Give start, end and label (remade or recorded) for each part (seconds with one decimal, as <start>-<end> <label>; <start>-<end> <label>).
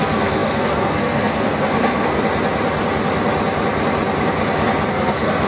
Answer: 0.0-2.2 remade; 2.2-4.9 recorded; 4.9-5.5 remade